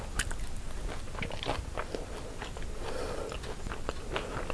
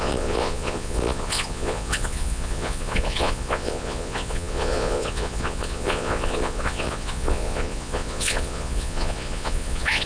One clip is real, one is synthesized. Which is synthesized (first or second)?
second